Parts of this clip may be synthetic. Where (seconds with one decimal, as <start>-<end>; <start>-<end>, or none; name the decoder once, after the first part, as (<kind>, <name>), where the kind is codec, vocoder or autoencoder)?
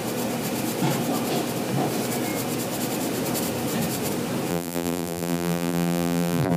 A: 4.5-6.6 (vocoder, BigVGAN v2)